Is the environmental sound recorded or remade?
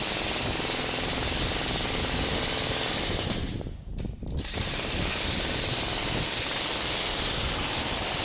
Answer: recorded